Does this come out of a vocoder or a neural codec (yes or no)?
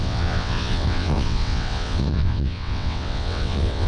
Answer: yes